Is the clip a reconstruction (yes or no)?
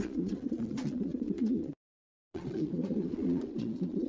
yes